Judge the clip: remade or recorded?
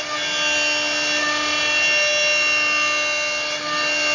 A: recorded